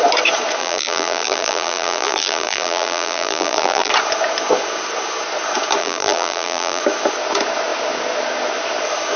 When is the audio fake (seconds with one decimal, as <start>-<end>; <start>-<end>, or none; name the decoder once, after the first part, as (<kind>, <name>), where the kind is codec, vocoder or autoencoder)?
0.6-3.9 (vocoder, BigVGAN v2); 5.8-6.8